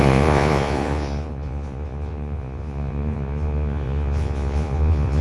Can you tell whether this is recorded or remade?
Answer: remade